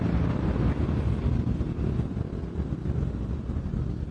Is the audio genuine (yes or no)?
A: yes